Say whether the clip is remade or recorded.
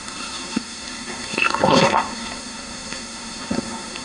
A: remade